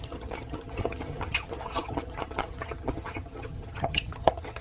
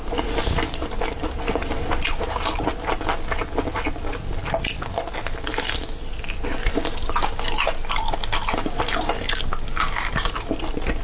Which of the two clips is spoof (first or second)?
first